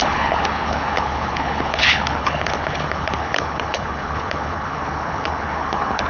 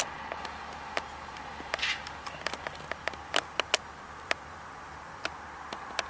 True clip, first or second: second